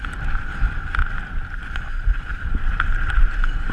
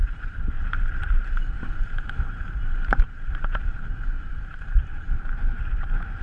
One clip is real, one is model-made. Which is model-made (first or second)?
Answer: second